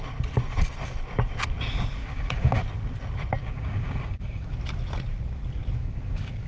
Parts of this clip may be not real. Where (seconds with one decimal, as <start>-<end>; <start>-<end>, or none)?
2.0-2.6; 3.4-4.5; 5.8-6.5